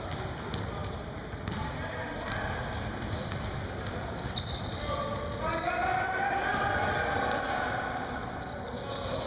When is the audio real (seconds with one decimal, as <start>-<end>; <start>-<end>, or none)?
0.0-9.3